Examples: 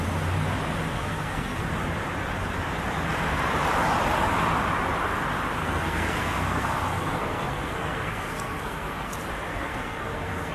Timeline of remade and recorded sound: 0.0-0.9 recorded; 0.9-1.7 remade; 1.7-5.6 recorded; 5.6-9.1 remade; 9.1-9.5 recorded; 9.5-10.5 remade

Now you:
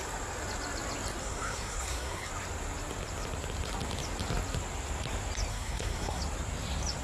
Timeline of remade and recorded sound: 0.0-1.2 recorded; 1.2-2.3 remade; 2.3-5.5 recorded; 5.5-6.2 remade; 6.2-7.0 recorded

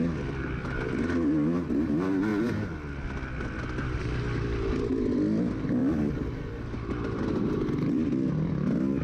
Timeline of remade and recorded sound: 0.0-9.0 recorded